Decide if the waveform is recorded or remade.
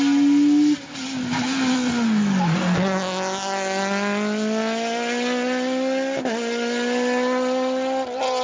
recorded